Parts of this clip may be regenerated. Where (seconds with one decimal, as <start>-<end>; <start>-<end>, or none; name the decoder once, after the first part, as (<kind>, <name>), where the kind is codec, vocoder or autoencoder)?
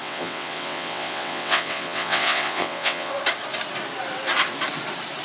0.0-3.1 (vocoder, WaveNeXt)